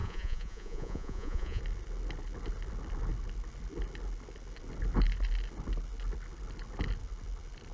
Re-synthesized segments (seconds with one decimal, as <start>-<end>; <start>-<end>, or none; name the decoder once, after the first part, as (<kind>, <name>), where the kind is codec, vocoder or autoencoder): 0.0-1.6 (vocoder, Vocos)